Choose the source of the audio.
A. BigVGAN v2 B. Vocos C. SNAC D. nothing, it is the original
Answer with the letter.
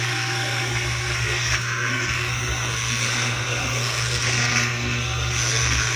C